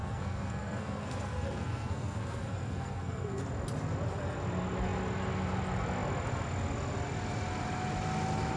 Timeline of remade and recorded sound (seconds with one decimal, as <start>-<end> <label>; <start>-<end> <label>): 0.0-3.4 remade; 3.4-8.6 recorded